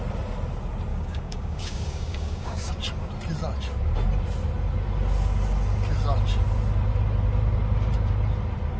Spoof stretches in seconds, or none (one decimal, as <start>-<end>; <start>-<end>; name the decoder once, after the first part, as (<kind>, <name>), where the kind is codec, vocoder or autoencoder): 0.9-2.7 (codec, DAC)